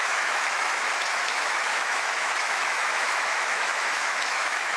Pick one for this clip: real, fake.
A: fake